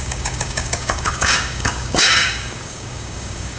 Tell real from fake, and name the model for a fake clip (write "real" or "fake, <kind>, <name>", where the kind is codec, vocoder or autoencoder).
fake, codec, DAC